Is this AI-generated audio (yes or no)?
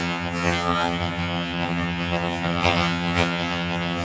yes